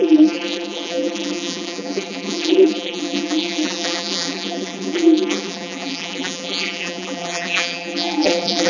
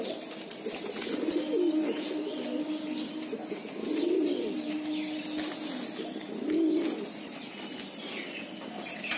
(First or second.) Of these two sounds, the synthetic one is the first